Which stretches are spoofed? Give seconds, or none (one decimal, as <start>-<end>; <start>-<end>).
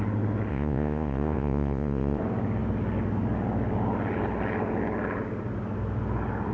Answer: 0.5-2.2